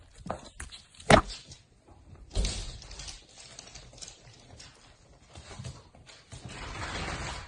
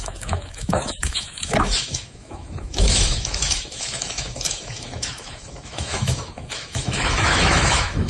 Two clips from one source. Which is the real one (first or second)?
first